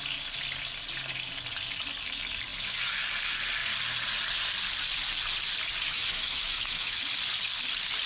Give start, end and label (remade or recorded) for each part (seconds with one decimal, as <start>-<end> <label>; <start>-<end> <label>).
0.0-5.9 recorded; 5.9-7.0 remade; 7.0-8.1 recorded